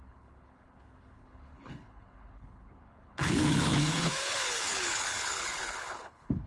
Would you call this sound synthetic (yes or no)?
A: yes